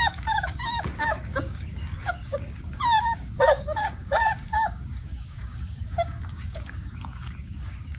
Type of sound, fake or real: fake